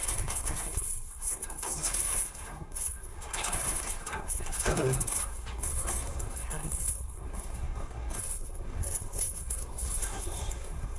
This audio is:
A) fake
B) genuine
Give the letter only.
A